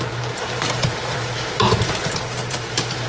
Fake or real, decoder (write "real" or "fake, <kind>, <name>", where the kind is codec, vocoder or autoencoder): fake, vocoder, BigVGAN v2